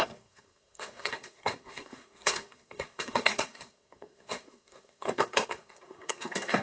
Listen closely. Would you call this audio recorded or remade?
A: remade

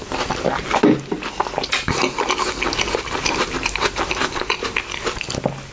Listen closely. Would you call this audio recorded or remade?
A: recorded